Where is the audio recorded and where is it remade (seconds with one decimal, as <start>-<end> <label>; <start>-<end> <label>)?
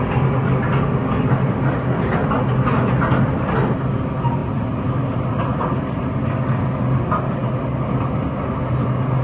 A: 0.0-9.2 recorded